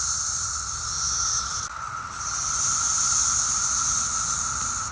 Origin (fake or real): real